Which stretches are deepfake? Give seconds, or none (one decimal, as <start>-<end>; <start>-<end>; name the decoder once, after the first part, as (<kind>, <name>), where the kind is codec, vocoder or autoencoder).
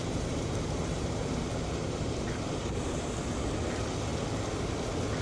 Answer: 0.0-3.1 (vocoder, BigVGAN v2)